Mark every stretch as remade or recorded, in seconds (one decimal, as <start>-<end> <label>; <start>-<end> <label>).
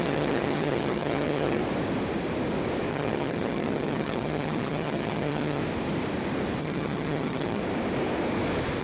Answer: 0.0-1.6 remade; 1.6-2.9 recorded; 2.9-5.6 remade; 5.6-6.6 recorded; 6.6-7.6 remade; 7.6-8.8 recorded